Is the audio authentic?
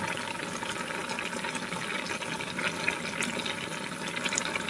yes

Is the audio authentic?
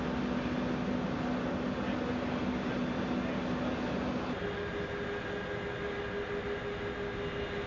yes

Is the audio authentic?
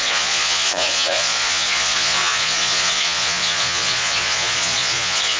no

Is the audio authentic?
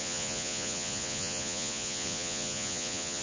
no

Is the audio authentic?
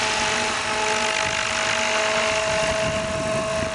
yes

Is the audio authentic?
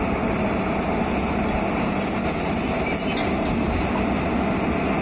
yes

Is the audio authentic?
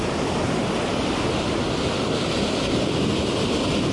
yes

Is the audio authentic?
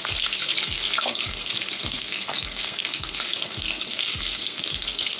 no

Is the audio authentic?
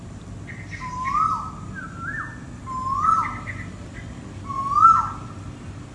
yes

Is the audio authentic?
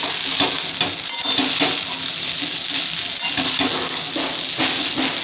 yes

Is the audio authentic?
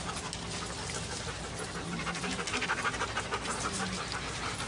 yes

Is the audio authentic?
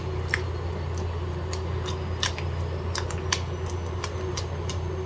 yes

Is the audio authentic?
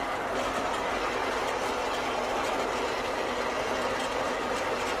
yes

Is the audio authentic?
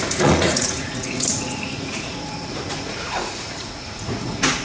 no